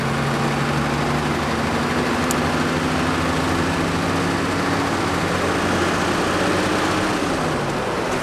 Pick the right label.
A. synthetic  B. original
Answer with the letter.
B